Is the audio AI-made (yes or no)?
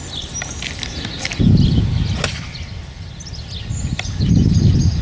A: no